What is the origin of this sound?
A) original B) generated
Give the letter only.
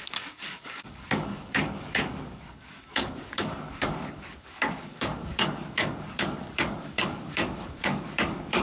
B